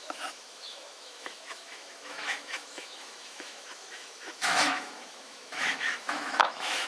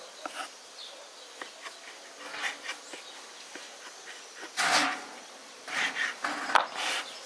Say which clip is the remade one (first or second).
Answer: first